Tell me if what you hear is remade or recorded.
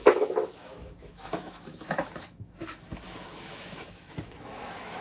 remade